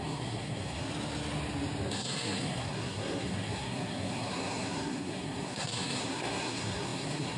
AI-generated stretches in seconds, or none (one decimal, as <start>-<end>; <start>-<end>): 0.0-0.9; 1.9-7.4